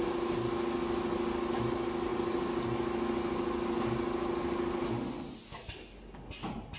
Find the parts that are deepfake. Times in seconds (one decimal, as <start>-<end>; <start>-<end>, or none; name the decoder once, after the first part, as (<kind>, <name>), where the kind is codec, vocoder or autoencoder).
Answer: none